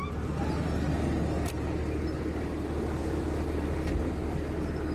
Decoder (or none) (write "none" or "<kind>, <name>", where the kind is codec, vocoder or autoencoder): none